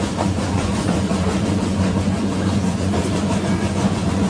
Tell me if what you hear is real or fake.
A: fake